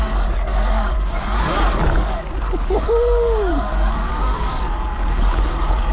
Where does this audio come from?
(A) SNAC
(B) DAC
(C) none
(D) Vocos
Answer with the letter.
B